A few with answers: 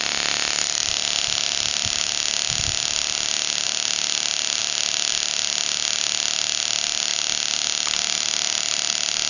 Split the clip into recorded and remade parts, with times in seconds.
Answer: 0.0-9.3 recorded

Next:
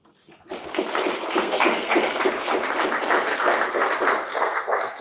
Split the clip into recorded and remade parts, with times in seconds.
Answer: 0.0-1.4 recorded; 1.4-2.3 remade; 2.3-3.3 recorded; 3.3-3.9 remade; 3.9-4.3 recorded; 4.3-5.0 remade

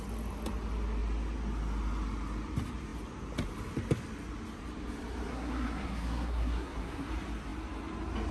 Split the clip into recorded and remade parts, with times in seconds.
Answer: 0.0-5.3 recorded; 5.3-7.1 remade; 7.1-8.3 recorded